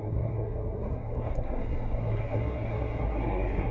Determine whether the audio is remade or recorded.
remade